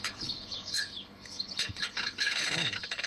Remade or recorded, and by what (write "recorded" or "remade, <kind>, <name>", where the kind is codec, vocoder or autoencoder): remade, codec, HILCodec